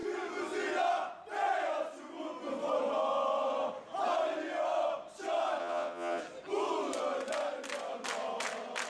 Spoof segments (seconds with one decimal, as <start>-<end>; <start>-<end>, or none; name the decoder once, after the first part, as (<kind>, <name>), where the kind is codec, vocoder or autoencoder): 5.6-6.2 (vocoder, WaveNeXt)